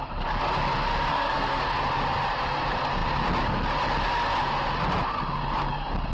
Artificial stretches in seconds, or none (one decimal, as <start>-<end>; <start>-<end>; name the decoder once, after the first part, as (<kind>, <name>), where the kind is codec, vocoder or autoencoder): 1.1-1.6 (codec, SNAC)